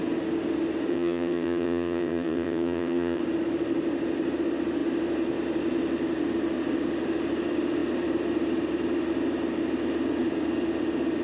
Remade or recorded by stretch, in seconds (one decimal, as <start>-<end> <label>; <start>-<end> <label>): 0.0-0.9 recorded; 0.9-3.2 remade; 3.2-11.2 recorded